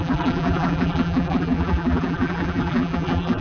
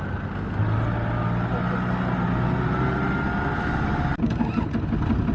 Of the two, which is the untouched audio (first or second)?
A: second